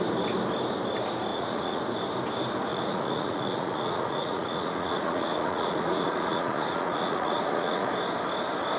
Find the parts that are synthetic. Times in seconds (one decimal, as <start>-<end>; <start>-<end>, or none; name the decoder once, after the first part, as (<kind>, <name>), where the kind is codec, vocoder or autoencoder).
1.3-1.8 (vocoder, Vocos); 2.7-7.9